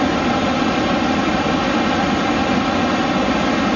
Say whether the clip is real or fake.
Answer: real